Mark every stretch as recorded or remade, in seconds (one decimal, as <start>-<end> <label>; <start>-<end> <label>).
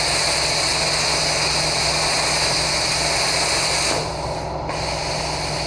0.0-5.7 recorded